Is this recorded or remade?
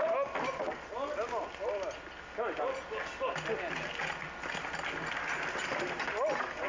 recorded